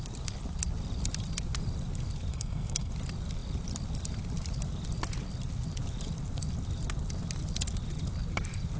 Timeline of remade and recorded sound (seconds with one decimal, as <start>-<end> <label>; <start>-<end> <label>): 0.0-2.3 recorded; 2.3-2.9 remade; 2.9-8.8 recorded